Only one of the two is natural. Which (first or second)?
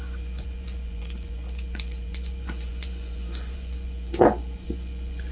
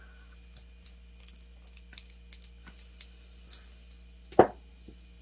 second